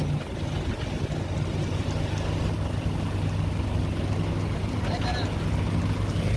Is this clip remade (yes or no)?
no